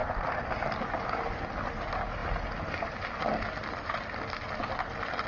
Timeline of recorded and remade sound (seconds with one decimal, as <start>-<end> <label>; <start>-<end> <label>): 0.0-5.3 recorded